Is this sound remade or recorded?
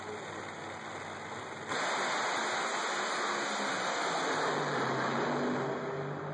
recorded